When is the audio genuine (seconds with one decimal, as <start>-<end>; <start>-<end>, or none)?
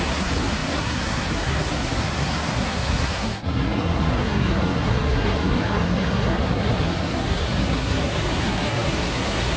none